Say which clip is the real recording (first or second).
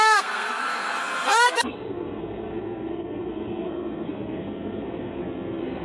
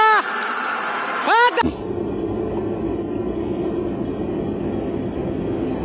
second